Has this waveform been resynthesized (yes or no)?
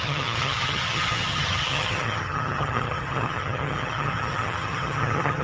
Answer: yes